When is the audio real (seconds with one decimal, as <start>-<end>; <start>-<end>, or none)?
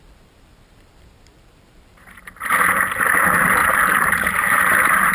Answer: 0.0-5.1